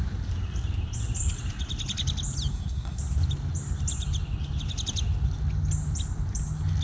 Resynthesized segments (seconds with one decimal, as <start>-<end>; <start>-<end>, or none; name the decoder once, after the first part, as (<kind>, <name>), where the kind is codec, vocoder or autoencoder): 2.5-3.0 (codec, SNAC)